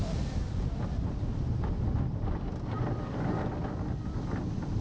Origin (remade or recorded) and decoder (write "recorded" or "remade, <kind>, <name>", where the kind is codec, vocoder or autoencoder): recorded